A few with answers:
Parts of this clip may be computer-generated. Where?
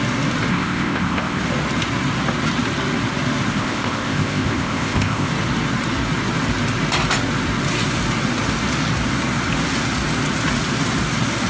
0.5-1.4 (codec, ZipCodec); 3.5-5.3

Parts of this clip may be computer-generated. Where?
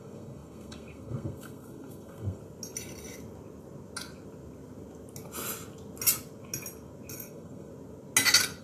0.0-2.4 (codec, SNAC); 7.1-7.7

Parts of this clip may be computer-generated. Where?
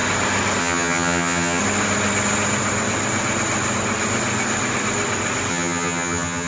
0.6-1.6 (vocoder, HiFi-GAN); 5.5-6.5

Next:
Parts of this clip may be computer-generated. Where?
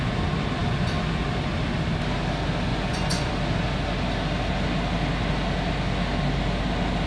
2.7-3.3 (vocoder, Vocos)